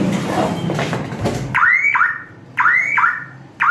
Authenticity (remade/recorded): recorded